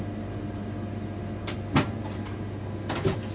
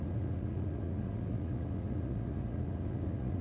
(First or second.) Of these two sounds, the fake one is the second